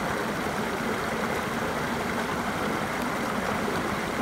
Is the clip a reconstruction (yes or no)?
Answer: no